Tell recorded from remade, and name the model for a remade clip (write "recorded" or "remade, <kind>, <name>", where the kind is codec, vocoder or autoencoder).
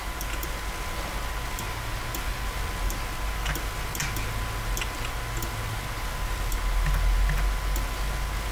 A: recorded